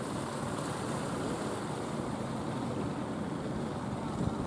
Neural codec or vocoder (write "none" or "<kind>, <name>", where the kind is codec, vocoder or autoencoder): none